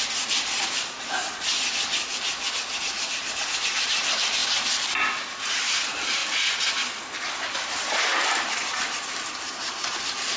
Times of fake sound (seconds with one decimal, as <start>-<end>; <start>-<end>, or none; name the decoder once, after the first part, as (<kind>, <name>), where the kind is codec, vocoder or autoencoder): 0.0-2.1 (vocoder, BigVGAN v2); 2.6-4.4; 5.4-6.2; 7.4-10.4